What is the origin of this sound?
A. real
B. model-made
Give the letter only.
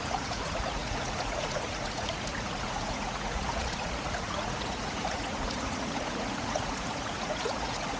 B